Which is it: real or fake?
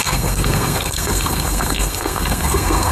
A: fake